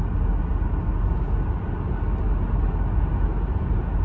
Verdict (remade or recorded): recorded